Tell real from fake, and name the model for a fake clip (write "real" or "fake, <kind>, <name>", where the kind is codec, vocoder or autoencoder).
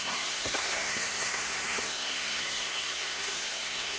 fake, codec, SNAC